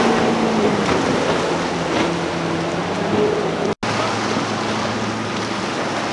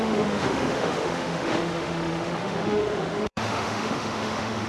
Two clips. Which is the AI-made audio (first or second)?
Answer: second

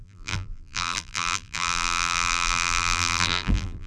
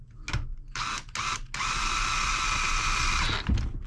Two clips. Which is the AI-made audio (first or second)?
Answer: first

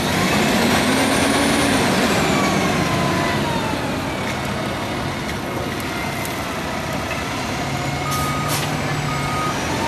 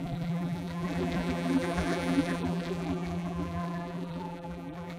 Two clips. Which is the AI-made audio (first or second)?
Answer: second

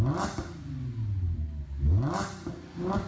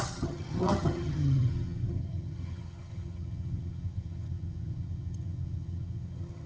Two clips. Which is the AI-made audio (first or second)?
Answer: second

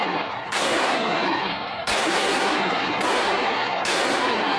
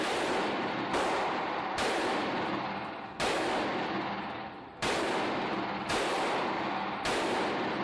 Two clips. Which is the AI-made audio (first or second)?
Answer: first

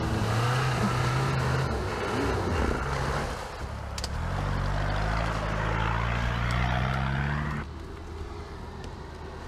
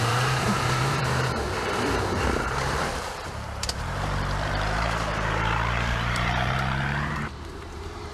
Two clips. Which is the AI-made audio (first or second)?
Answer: second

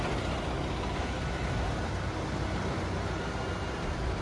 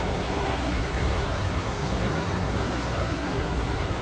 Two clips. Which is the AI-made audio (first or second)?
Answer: second